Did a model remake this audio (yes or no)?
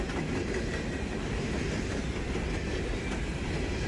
no